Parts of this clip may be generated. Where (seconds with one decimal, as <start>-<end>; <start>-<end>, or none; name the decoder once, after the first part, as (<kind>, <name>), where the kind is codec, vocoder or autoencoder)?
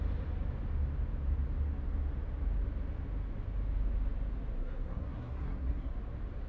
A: 4.6-5.9 (codec, SNAC)